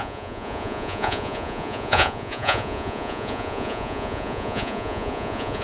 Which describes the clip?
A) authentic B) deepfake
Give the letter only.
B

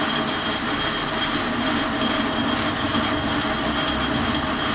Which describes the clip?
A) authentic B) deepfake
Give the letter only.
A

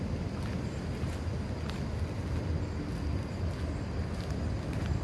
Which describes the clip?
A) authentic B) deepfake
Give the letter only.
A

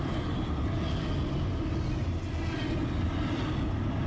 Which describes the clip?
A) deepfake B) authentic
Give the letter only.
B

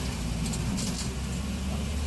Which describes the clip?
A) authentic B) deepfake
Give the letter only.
A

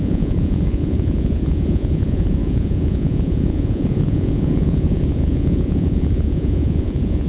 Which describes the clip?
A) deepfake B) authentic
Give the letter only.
A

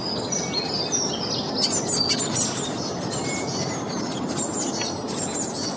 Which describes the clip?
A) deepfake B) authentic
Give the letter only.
B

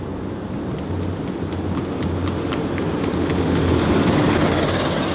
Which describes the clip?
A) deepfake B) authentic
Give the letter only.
B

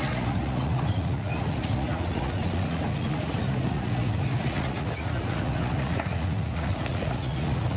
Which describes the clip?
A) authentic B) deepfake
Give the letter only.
B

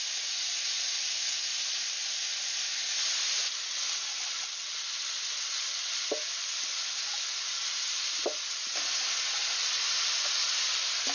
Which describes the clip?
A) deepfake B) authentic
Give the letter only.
B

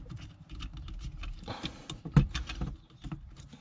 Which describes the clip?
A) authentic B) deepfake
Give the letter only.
A